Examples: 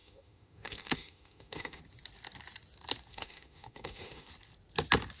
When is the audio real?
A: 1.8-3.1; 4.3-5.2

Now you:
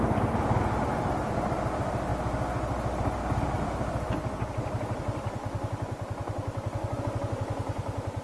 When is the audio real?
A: 0.0-8.2

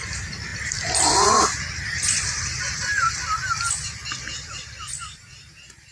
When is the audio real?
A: 0.0-5.9

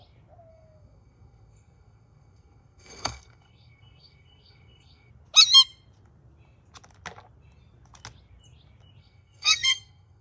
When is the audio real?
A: 0.0-0.5; 5.1-9.0

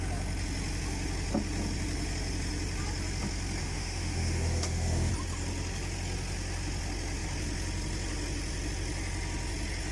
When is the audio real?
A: 0.0-3.6; 5.1-9.9

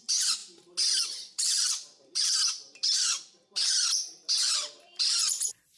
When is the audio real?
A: 0.4-0.9

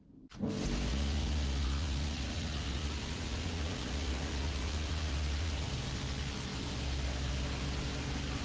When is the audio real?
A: 0.0-0.9; 5.7-8.4

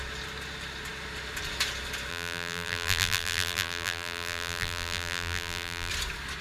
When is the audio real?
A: 0.0-2.1; 5.9-6.4